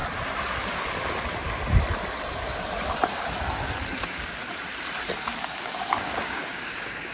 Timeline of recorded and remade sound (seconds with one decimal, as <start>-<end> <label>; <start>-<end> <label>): 0.0-4.0 recorded; 4.0-4.4 remade; 4.4-5.6 recorded; 5.6-7.1 remade